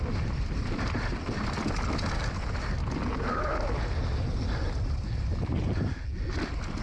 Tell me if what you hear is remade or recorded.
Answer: recorded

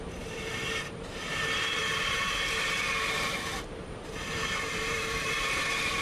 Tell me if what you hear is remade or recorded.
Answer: remade